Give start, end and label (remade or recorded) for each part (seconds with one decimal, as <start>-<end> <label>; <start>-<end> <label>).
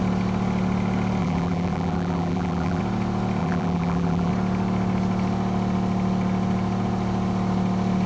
0.0-1.2 recorded; 1.2-2.8 remade; 2.8-3.4 recorded; 3.4-4.3 remade; 4.3-8.1 recorded